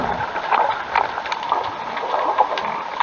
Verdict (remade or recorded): recorded